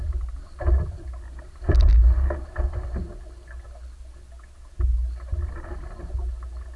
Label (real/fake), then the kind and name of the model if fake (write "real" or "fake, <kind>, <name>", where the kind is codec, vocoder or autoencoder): real